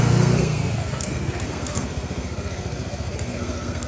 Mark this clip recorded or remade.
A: remade